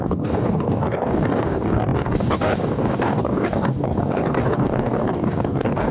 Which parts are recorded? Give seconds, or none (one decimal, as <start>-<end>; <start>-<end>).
none